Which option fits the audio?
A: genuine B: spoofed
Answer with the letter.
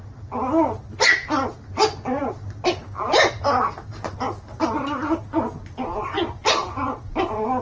A